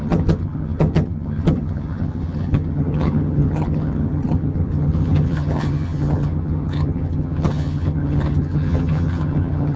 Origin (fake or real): fake